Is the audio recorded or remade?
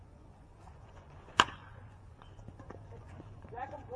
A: remade